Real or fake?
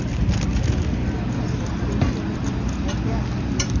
real